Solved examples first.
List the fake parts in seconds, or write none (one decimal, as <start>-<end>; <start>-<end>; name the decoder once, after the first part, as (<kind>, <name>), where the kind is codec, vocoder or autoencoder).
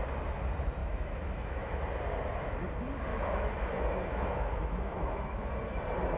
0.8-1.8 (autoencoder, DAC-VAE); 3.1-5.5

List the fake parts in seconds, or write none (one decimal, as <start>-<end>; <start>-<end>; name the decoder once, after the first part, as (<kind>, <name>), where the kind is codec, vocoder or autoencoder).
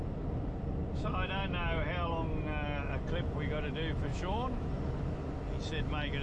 4.1-4.7 (autoencoder, DAC-VAE)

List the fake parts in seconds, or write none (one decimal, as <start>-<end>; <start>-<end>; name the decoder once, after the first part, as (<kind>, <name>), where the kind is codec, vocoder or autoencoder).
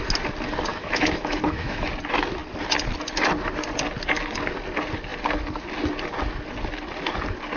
0.7-1.9 (autoencoder, DAC-VAE)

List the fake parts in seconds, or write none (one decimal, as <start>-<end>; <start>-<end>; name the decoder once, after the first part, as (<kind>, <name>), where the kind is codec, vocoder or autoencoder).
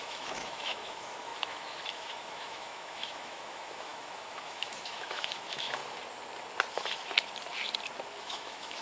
0.0-5.8 (autoencoder, DAC-VAE); 8.2-8.8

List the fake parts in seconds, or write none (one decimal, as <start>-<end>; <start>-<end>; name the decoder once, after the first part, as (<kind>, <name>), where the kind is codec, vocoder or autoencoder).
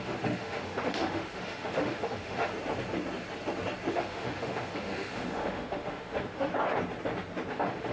0.0-2.5 (autoencoder, DAC-VAE); 3.9-6.5; 7.5-7.9